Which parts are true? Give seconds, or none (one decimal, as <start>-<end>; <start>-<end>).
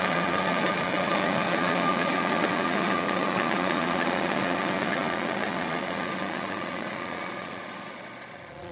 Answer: none